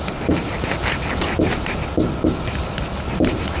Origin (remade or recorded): recorded